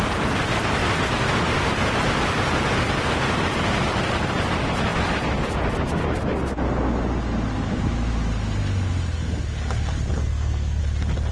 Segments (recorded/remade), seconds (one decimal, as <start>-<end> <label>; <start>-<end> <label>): 0.0-10.2 recorded; 10.2-10.8 remade; 10.8-11.3 recorded